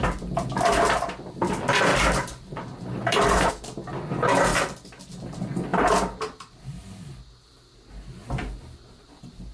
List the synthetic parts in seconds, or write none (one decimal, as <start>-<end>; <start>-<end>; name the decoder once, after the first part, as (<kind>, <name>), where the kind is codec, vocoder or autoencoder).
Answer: 1.9-3.5 (vocoder, BigVGAN v2)